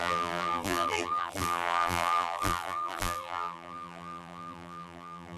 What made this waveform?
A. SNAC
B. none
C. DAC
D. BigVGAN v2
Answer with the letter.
D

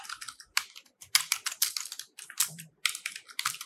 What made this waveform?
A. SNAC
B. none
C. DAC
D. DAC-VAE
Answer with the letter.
B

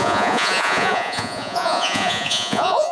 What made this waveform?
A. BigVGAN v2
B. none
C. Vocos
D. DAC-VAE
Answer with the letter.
C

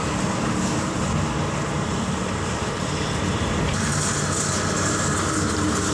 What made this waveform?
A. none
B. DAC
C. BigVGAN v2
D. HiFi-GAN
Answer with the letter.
C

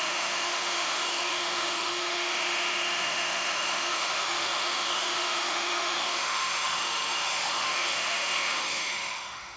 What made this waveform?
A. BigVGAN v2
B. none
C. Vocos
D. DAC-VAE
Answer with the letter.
D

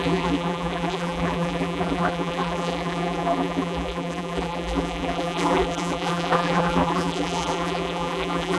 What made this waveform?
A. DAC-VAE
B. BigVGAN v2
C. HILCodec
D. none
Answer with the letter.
B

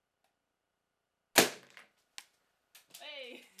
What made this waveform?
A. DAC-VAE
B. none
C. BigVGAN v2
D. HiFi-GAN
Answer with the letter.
B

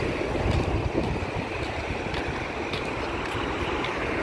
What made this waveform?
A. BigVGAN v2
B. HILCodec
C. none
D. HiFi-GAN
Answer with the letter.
C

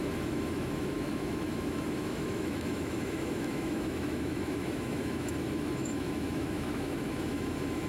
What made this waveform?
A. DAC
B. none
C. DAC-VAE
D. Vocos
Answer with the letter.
C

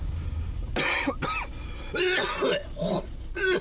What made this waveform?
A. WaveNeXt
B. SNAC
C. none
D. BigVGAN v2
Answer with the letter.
C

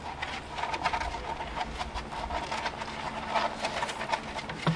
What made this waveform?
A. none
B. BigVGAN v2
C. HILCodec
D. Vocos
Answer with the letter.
A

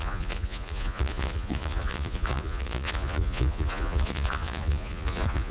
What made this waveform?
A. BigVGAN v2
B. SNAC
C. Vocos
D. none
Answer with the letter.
C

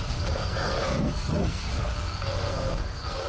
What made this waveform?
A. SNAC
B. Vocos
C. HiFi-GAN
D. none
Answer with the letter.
A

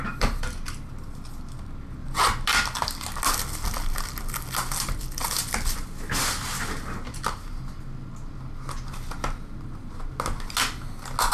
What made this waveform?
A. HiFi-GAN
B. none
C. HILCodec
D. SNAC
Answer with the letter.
B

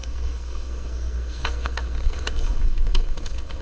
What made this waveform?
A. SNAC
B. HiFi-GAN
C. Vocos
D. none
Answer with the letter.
A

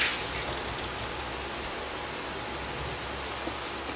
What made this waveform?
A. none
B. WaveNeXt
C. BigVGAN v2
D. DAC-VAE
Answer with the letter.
A